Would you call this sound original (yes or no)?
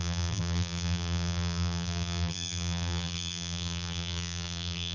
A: no